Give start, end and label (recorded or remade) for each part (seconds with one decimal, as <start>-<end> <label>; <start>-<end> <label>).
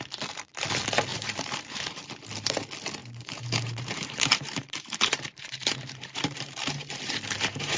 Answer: 0.0-1.1 recorded; 1.1-2.1 remade; 2.1-3.0 recorded; 3.0-7.8 remade